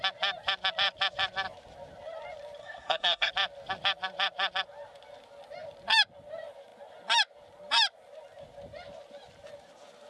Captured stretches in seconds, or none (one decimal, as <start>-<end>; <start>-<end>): 0.0-2.6; 3.3-10.1